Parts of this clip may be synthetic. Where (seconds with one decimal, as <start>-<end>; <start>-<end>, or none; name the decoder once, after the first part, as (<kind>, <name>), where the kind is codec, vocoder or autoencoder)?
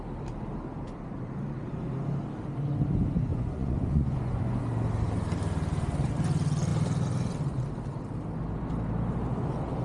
3.3-4.6 (vocoder, Vocos)